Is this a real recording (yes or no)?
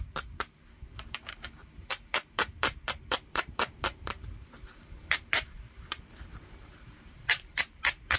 no